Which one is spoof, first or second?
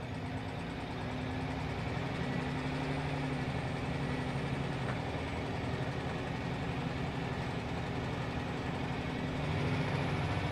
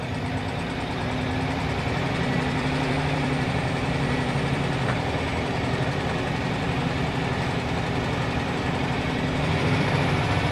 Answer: second